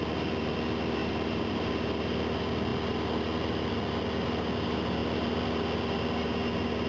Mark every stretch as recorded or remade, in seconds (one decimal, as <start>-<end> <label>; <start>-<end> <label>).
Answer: 0.0-1.0 recorded; 1.0-1.7 remade; 1.7-6.9 recorded

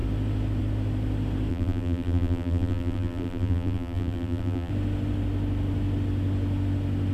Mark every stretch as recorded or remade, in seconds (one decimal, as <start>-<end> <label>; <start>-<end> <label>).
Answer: 0.0-1.5 recorded; 1.5-4.7 remade; 4.7-7.1 recorded

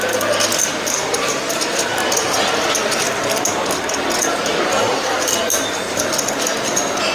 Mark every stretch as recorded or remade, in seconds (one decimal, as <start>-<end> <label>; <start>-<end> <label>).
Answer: 0.0-0.7 recorded; 0.7-1.8 remade; 1.8-4.5 recorded; 4.5-6.0 remade; 6.0-7.1 recorded

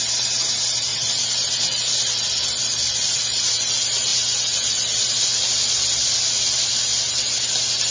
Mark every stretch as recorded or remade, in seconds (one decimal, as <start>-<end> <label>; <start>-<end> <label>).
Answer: 0.0-0.9 recorded; 0.9-3.5 remade; 3.5-7.9 recorded

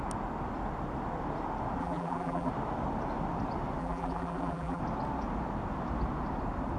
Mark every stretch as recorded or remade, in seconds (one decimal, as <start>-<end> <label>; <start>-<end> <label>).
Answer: 0.0-1.8 recorded; 1.8-2.5 remade; 2.5-3.8 recorded; 3.8-4.8 remade; 4.8-6.8 recorded

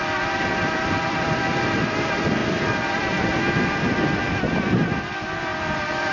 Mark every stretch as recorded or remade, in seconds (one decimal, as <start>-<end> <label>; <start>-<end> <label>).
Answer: 0.0-2.0 remade; 2.0-2.4 recorded; 2.4-3.1 remade; 3.1-6.1 recorded